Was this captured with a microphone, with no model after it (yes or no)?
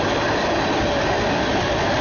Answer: yes